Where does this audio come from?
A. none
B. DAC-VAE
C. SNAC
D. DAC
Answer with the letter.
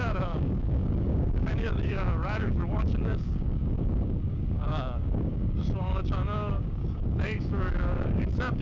D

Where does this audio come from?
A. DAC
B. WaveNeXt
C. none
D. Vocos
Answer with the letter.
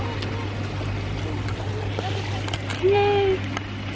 C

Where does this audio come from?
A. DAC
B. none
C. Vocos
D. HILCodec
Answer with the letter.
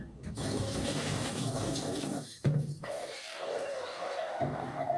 A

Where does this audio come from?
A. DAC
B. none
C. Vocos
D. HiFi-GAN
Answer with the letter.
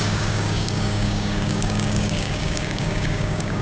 A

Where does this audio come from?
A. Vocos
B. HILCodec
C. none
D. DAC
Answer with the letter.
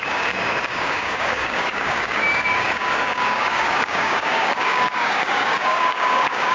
D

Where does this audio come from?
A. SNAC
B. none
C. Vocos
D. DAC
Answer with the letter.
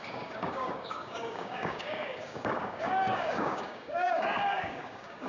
D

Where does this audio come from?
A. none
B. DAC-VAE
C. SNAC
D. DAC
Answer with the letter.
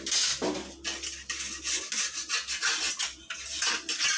A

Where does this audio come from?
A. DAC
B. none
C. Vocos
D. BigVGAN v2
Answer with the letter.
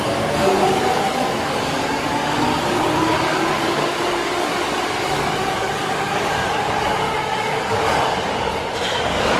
A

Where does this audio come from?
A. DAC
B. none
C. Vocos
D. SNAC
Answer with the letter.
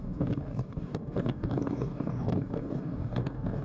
A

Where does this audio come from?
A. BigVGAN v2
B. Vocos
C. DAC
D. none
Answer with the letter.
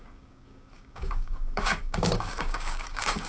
C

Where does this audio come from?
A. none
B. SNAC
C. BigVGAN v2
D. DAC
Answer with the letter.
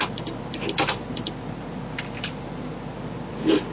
A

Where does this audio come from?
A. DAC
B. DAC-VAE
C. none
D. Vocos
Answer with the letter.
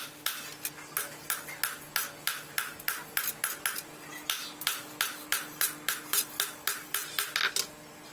C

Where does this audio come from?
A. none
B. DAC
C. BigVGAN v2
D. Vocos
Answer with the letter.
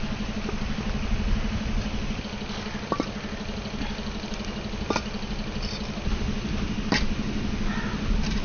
A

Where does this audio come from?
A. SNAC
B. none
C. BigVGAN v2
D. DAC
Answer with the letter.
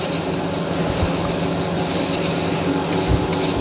B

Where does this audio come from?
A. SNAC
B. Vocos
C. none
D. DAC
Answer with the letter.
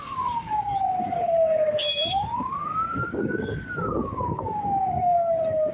D